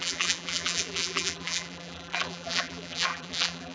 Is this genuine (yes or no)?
no